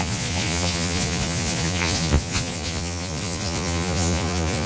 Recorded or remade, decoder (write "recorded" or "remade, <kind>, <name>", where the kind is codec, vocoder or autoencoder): remade, vocoder, Vocos